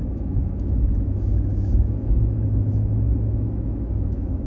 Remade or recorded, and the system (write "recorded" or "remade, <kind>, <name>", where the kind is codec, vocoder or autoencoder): remade, autoencoder, DAC-VAE